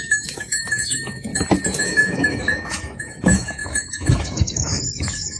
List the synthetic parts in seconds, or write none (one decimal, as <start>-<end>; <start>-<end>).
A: 0.0-1.3; 1.8-5.4